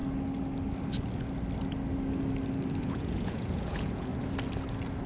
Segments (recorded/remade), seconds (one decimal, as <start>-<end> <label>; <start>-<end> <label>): 0.0-2.8 recorded; 2.8-4.1 remade; 4.1-5.1 recorded